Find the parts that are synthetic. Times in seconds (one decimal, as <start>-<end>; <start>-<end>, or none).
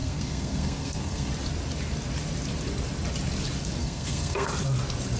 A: 0.0-1.3; 3.8-4.5